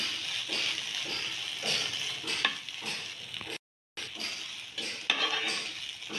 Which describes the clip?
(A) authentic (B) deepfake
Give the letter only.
A